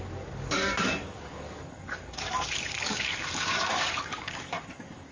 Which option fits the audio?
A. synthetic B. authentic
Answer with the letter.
A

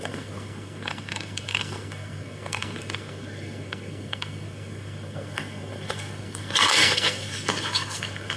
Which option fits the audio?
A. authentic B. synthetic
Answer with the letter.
B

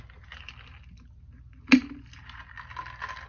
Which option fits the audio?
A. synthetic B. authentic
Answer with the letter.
B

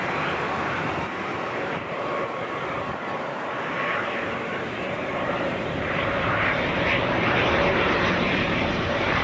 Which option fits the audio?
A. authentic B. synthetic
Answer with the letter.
B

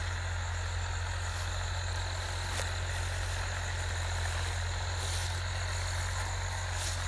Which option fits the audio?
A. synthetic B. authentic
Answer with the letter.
B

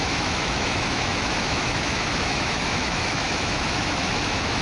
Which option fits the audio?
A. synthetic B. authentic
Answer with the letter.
A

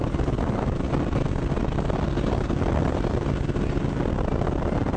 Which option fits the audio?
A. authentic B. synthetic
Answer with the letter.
A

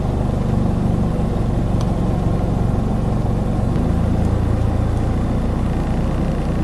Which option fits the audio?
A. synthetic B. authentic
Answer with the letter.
B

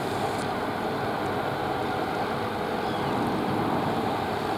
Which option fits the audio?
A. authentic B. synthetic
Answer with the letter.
A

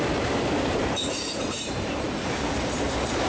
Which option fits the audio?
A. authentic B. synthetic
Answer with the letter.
B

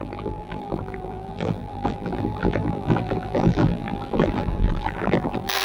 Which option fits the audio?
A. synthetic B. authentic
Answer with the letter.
A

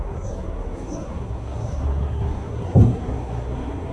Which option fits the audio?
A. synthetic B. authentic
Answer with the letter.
A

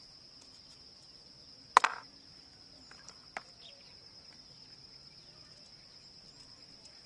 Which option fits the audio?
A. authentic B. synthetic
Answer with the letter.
A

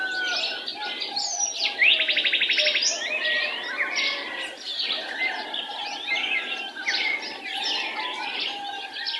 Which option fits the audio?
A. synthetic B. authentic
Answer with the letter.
B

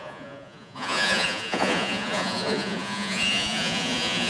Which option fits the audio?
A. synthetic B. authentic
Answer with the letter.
A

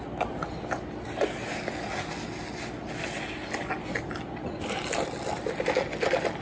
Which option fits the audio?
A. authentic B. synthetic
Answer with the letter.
A